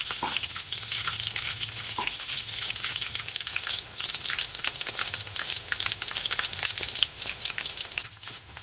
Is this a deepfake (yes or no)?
yes